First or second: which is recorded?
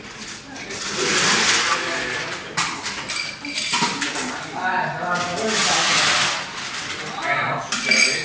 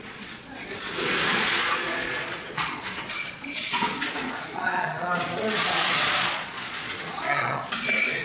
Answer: first